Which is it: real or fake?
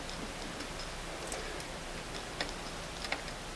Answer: real